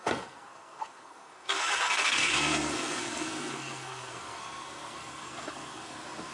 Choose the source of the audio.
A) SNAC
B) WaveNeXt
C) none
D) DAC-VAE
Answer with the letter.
A